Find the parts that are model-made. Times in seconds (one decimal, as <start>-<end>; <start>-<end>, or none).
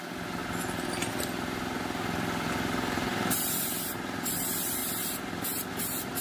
0.0-0.4; 1.1-4.8; 5.7-6.2